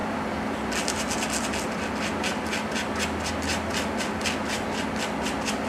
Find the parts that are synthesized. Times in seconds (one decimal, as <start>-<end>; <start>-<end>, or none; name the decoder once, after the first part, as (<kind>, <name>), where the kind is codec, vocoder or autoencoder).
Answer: none